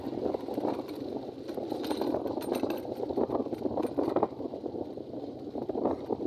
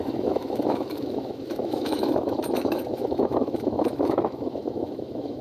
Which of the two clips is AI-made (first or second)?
second